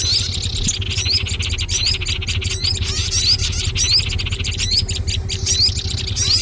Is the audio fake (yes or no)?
no